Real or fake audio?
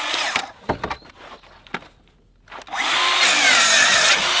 real